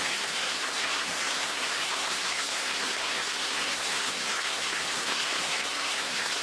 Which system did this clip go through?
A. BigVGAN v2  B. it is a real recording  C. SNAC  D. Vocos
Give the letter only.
C